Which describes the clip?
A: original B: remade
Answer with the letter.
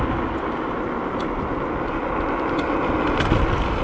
A